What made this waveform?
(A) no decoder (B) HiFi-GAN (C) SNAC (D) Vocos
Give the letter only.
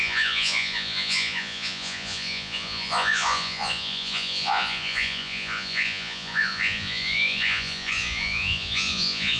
D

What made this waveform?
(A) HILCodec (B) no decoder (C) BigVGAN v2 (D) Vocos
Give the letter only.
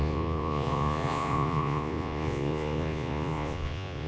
D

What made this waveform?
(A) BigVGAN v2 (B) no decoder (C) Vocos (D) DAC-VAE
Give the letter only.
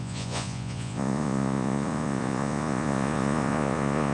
C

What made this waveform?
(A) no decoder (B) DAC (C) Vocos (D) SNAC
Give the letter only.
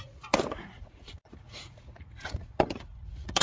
C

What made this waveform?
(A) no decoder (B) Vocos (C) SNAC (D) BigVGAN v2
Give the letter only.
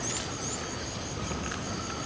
A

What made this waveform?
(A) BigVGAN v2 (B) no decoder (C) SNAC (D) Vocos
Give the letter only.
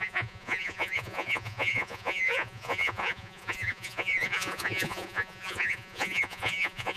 D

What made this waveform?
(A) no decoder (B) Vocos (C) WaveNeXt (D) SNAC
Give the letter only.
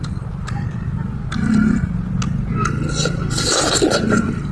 A